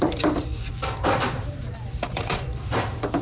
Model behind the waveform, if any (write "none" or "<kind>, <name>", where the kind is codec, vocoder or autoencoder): vocoder, BigVGAN v2